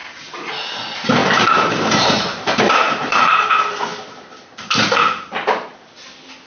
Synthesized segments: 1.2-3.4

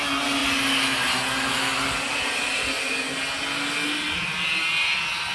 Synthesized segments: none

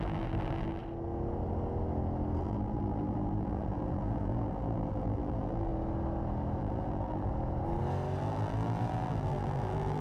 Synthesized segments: 0.0-0.8; 2.4-5.7; 6.6-7.3; 8.2-10.0

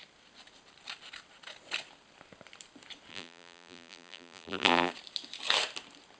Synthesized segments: 3.1-4.9

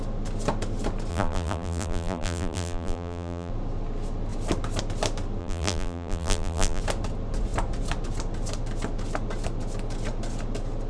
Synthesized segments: 1.1-3.5; 5.4-6.8